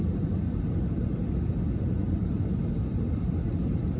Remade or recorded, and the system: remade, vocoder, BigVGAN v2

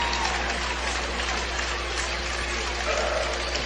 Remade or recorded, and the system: recorded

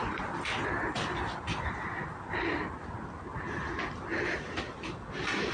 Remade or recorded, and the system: recorded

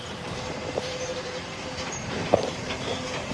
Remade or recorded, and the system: remade, vocoder, BigVGAN v2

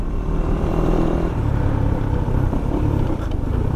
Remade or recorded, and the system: remade, vocoder, BigVGAN v2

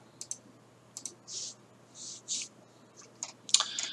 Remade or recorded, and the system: recorded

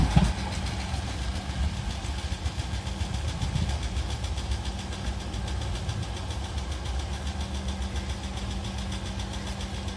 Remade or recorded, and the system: recorded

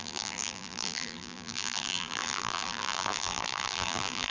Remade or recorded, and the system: remade, vocoder, BigVGAN v2